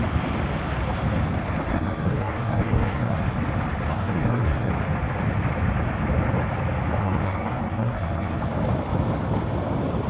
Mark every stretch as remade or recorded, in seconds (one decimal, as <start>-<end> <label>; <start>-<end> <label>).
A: 0.0-1.7 recorded; 1.7-3.2 remade; 3.2-3.9 recorded; 3.9-4.7 remade; 4.7-7.0 recorded; 7.0-8.4 remade; 8.4-10.1 recorded